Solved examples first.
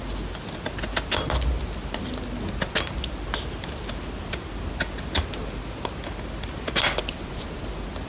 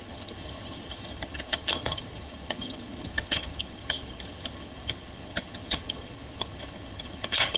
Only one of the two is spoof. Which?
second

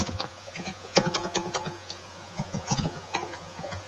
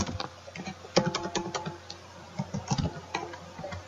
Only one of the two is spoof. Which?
first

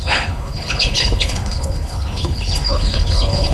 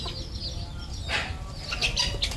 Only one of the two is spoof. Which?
first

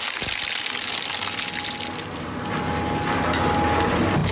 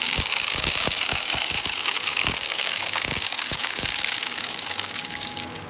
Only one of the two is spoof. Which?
second